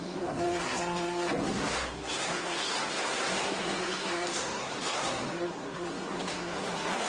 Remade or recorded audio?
remade